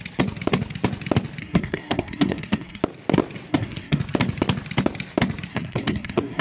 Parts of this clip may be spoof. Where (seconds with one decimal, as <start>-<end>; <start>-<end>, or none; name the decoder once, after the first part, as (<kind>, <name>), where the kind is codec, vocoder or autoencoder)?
1.4-2.8 (codec, SNAC); 3.5-4.0; 5.5-6.4

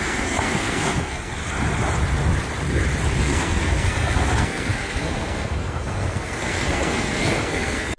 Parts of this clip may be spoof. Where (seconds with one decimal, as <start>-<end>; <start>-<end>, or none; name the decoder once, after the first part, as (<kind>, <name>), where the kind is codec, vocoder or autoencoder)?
0.0-1.4 (codec, SNAC); 3.2-8.0